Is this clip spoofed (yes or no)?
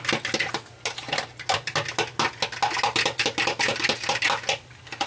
no